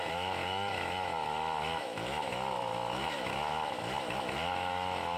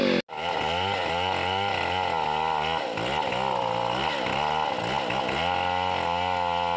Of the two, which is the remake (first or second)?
first